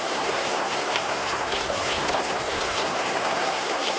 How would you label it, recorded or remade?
remade